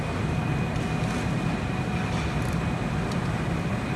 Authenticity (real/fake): real